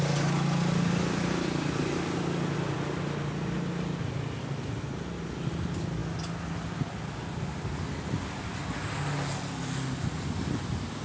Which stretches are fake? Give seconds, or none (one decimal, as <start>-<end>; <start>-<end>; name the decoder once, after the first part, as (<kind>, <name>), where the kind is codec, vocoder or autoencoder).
none

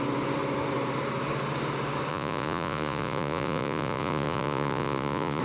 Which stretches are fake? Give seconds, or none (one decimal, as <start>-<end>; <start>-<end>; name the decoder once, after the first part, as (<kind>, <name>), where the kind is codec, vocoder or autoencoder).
2.1-5.4 (vocoder, Vocos)

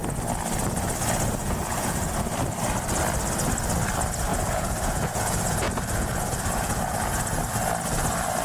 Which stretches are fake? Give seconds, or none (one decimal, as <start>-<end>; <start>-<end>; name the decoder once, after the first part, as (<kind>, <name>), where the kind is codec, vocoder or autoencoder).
1.4-2.1 (vocoder, Vocos); 4.3-7.4

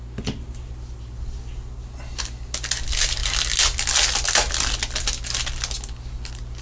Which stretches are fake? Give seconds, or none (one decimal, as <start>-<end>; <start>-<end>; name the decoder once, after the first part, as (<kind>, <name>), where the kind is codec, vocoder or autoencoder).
none

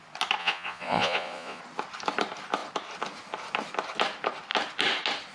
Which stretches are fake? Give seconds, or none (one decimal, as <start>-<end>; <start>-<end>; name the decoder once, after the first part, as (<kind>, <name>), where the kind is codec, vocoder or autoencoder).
0.4-1.6 (vocoder, Vocos)